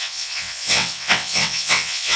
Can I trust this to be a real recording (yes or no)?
no